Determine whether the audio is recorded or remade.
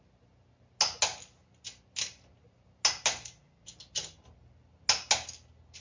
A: recorded